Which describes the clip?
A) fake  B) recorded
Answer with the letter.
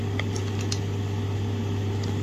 B